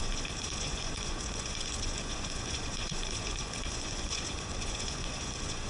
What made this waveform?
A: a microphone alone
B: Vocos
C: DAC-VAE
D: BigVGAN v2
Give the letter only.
B